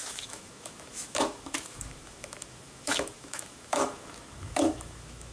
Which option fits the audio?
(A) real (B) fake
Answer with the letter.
B